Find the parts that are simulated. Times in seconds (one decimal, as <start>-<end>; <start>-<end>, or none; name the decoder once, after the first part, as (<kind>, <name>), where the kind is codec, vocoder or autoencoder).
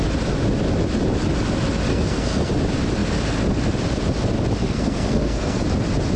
1.9-2.5 (codec, SNAC); 4.6-5.6